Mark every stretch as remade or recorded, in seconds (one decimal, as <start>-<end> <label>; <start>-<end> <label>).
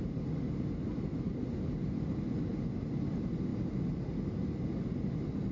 0.0-5.5 recorded